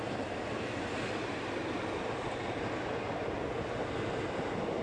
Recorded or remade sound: recorded